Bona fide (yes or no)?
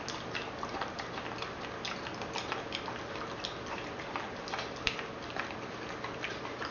yes